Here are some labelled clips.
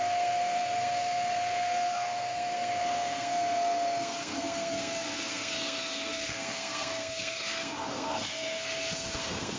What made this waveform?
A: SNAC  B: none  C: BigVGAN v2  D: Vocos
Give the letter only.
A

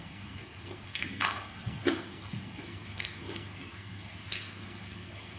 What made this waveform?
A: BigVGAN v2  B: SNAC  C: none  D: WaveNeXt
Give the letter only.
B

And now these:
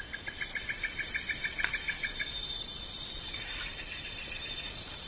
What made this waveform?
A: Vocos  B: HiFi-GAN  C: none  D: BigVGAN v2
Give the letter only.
C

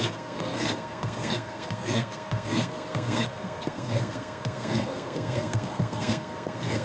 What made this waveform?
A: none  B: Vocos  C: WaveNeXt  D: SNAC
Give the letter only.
D